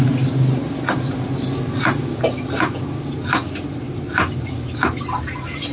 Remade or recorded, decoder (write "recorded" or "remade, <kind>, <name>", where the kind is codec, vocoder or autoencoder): recorded